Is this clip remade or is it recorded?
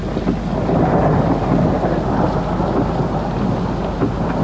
recorded